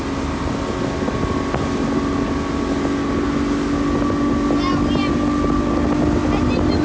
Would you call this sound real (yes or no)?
yes